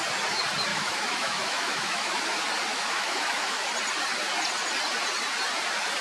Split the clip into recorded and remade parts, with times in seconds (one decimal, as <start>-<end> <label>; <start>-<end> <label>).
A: 0.0-0.7 recorded; 0.7-2.2 remade; 2.2-2.7 recorded; 2.7-3.7 remade; 3.7-6.0 recorded